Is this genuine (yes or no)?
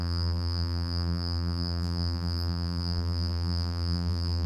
no